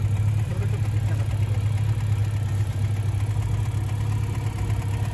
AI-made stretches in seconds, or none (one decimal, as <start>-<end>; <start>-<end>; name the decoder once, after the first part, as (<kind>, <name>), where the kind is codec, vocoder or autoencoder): none